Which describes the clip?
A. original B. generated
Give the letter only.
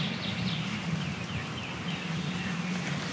A